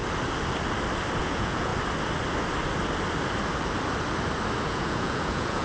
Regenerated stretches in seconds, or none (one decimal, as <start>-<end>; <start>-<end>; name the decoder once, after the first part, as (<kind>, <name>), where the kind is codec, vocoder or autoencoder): 1.2-1.7 (vocoder, Vocos); 4.7-5.6